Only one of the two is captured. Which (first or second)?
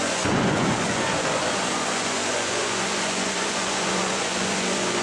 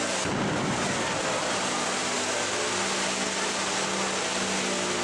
second